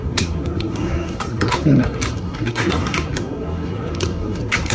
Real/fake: fake